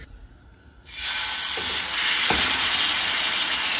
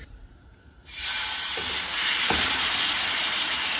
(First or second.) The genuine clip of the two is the first